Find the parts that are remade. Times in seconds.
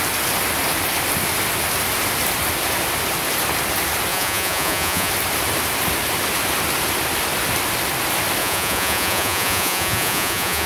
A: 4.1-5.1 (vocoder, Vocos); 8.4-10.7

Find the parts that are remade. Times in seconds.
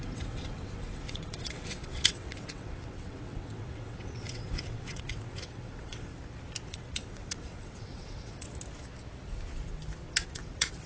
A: 0.0-6.1 (vocoder, WaveNeXt); 6.7-8.5; 10.2-10.9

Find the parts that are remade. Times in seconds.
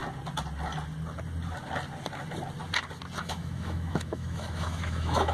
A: 3.2-5.3 (autoencoder, DAC-VAE)